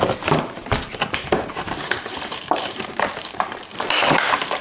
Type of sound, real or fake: fake